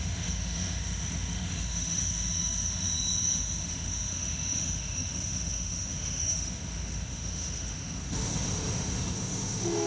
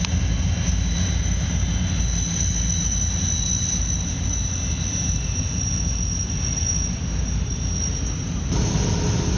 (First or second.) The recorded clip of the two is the second